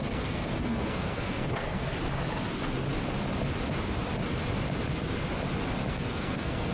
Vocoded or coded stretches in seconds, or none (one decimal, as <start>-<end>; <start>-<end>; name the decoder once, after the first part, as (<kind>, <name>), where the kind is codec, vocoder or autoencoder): 0.0-1.9 (codec, SNAC); 5.9-6.7